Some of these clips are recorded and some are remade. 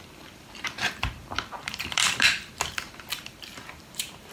remade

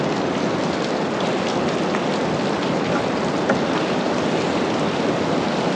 recorded